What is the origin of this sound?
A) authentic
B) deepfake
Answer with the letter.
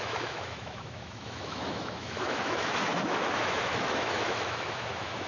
B